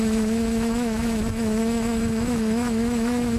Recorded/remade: remade